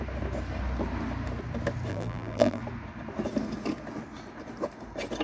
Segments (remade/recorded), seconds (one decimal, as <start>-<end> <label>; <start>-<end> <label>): 0.0-1.9 recorded; 1.9-2.6 remade; 2.6-5.2 recorded